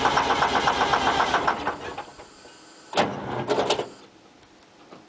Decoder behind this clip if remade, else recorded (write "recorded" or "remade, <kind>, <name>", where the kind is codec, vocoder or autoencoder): recorded